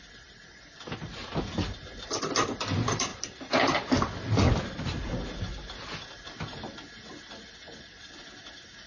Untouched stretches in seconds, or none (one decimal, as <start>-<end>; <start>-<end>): 0.0-8.9